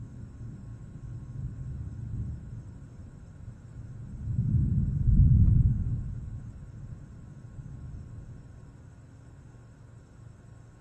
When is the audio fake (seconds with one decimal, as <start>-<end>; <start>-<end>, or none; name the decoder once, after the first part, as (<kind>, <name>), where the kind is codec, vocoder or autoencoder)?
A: 3.0-7.0 (vocoder, BigVGAN v2)